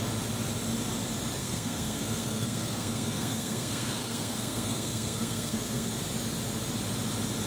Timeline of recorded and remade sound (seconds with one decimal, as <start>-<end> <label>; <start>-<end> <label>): 0.0-1.4 recorded; 1.4-5.9 remade; 5.9-7.5 recorded